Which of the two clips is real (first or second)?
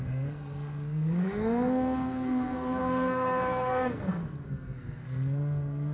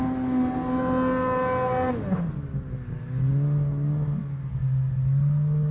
second